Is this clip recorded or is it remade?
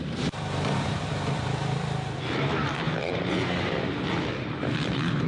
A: remade